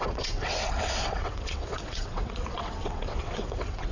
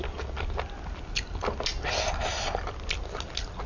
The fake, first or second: first